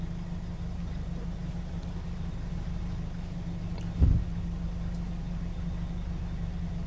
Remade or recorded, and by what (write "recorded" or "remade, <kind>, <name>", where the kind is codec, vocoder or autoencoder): recorded